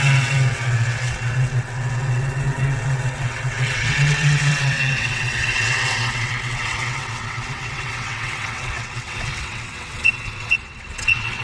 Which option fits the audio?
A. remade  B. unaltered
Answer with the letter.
A